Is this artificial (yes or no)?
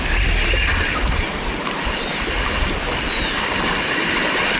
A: no